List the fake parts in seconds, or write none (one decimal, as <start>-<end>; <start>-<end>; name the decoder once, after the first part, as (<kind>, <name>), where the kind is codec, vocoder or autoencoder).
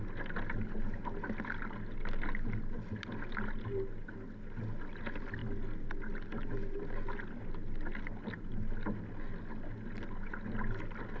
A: none